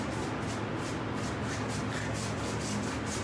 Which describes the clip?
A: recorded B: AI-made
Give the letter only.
A